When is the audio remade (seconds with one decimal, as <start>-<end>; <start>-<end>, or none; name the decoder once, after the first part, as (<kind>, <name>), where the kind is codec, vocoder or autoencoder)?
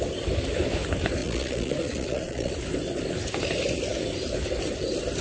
1.2-2.5 (vocoder, Vocos)